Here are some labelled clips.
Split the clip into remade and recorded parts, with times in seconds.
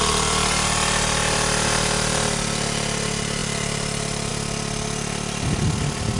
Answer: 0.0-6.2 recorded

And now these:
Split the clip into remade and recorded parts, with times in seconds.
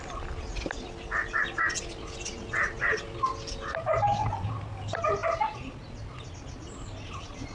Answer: 0.0-7.5 recorded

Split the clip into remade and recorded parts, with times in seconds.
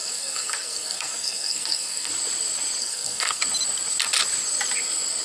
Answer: 0.0-2.1 remade; 2.1-2.8 recorded; 2.8-3.4 remade; 3.4-5.2 recorded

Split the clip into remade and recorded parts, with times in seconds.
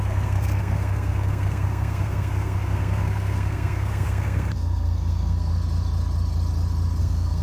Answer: 0.0-5.5 remade; 5.5-7.0 recorded; 7.0-7.4 remade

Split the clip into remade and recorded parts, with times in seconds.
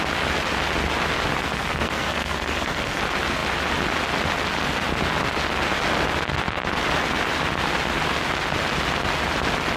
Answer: 0.0-1.4 recorded; 1.4-3.0 remade; 3.0-9.8 recorded